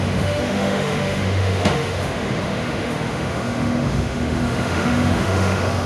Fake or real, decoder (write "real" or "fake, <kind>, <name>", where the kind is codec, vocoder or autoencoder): fake, autoencoder, DAC-VAE